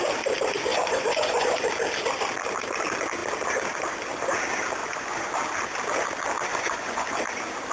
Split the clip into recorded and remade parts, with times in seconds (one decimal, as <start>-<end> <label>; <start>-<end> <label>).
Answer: 0.0-0.7 recorded; 0.7-1.7 remade; 1.7-4.8 recorded; 4.8-5.3 remade; 5.3-6.5 recorded; 6.5-7.1 remade; 7.1-7.7 recorded